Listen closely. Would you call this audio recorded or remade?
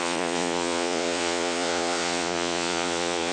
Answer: remade